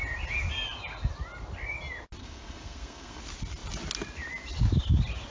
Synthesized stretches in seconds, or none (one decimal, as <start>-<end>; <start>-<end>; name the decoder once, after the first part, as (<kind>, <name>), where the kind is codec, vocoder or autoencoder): 2.2-3.2 (codec, SNAC)